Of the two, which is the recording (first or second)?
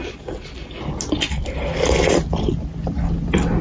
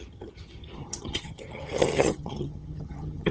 first